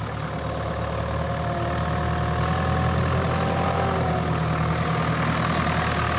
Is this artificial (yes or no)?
no